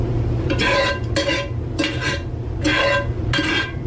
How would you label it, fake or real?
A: real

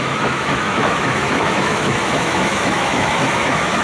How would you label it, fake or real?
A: fake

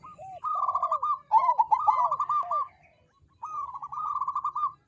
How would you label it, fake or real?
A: real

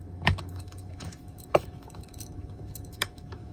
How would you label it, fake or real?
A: fake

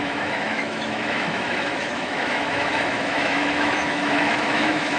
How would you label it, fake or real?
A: fake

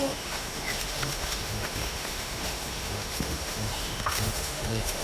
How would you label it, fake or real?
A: fake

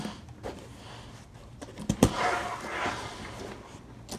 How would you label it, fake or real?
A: real